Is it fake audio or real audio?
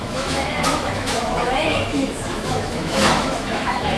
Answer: fake